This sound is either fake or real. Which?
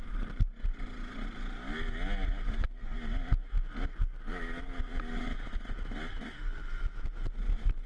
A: real